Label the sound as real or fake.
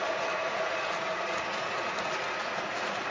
fake